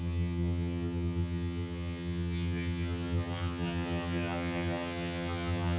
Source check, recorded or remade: remade